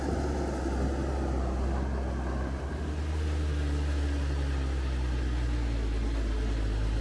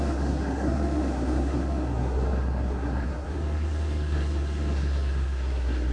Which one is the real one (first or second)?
first